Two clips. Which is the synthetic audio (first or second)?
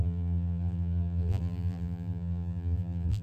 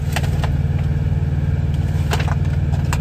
first